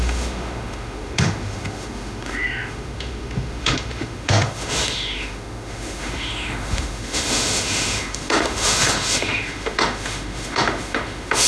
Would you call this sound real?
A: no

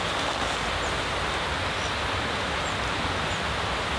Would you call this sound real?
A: yes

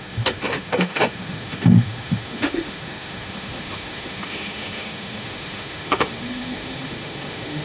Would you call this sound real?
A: no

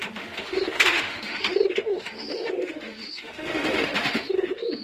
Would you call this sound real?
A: no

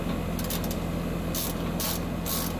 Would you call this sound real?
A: yes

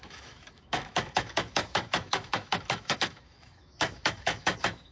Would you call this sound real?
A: no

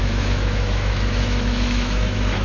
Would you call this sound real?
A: no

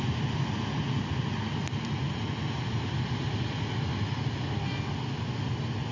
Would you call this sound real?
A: yes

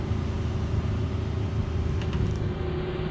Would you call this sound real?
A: yes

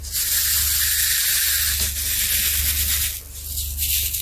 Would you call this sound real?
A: yes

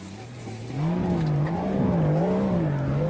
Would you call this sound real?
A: yes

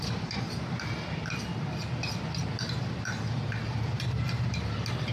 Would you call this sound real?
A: yes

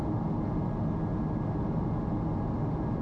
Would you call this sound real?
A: yes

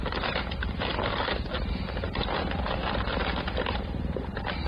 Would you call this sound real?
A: yes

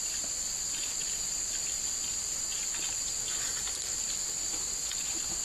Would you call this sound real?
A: yes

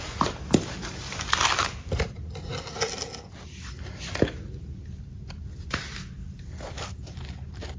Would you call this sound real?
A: yes